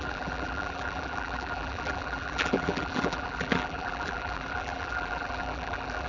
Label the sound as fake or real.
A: fake